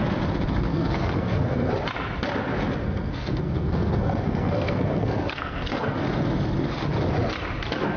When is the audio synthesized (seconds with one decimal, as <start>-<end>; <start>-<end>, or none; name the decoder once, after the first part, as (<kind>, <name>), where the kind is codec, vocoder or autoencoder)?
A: 0.7-1.7 (codec, SNAC); 2.8-6.0